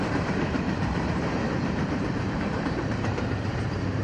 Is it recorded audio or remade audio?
remade